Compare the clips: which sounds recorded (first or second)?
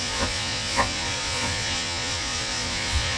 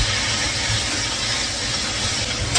second